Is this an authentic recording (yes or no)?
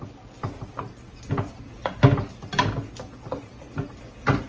yes